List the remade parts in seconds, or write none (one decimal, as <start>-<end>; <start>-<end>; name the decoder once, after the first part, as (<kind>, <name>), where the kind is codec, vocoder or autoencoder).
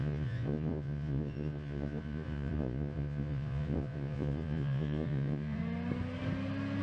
0.0-5.6 (vocoder, Vocos)